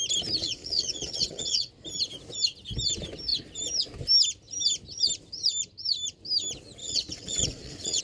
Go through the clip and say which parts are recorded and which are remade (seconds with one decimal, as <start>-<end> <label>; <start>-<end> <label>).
0.0-0.4 recorded; 0.4-1.7 remade; 1.7-6.8 recorded; 6.8-8.0 remade